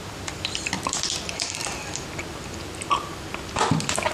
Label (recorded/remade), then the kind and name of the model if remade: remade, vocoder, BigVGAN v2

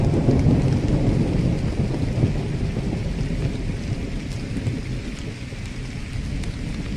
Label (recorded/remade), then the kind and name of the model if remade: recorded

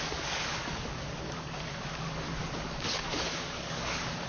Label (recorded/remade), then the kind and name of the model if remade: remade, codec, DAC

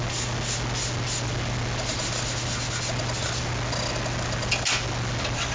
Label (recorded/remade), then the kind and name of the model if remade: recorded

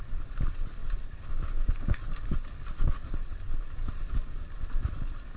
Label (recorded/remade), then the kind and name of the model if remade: recorded